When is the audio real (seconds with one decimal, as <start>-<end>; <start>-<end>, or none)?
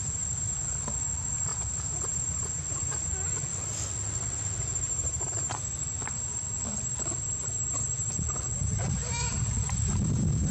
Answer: 0.0-10.5